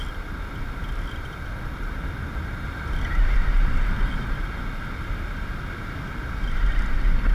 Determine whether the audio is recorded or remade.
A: recorded